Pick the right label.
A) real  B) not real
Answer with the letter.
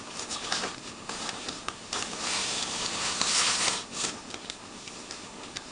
B